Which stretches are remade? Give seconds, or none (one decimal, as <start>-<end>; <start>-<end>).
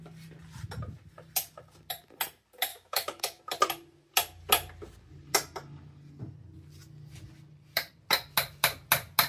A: 2.7-3.4